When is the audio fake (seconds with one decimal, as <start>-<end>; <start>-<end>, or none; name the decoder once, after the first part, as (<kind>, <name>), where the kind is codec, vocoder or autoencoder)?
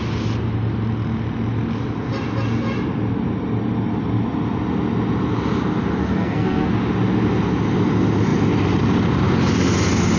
6.0-6.7 (codec, SNAC)